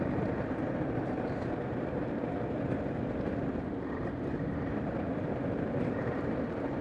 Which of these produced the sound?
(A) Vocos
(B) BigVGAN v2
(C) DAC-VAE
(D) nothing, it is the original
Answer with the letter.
B